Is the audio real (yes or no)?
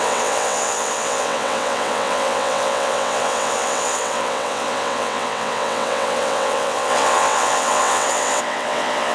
no